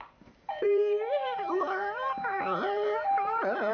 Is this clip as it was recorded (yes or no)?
no